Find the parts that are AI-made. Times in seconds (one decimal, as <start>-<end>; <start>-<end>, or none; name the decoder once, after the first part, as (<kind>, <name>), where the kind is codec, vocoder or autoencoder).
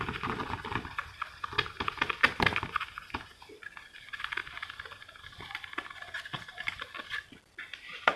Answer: none